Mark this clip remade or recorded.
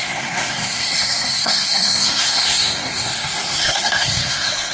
remade